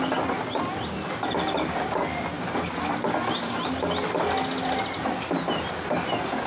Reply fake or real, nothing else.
real